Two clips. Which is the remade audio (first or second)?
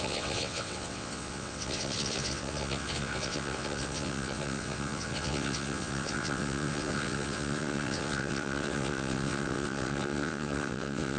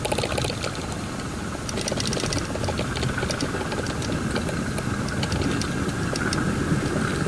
first